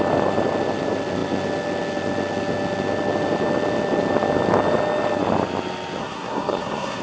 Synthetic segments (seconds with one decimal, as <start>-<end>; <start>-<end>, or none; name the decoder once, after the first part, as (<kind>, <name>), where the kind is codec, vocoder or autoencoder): 6.0-7.0 (codec, SNAC)